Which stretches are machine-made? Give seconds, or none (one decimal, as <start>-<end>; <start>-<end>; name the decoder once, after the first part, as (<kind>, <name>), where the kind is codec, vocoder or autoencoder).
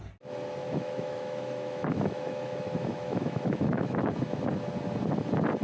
0.6-4.0 (autoencoder, DAC-VAE)